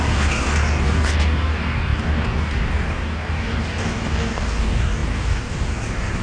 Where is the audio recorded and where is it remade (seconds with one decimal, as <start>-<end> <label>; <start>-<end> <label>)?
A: 0.0-6.2 remade